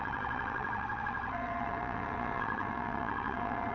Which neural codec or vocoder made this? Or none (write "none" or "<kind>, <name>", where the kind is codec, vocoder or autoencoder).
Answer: vocoder, WaveNeXt